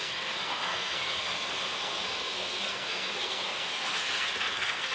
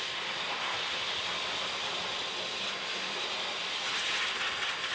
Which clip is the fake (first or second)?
first